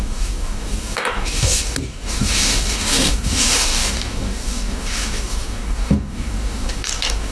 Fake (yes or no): yes